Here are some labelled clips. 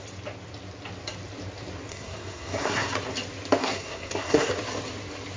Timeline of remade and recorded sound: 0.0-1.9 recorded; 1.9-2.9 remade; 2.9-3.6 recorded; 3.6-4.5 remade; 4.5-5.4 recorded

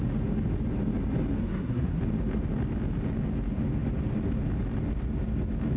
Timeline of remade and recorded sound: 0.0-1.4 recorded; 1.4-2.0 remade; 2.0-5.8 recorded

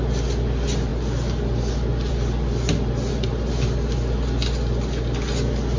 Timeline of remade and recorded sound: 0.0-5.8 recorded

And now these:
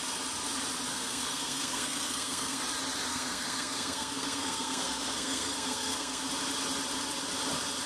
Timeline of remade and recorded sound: 0.0-0.9 recorded; 0.9-2.6 remade; 2.6-3.1 recorded; 3.1-6.2 remade; 6.2-7.9 recorded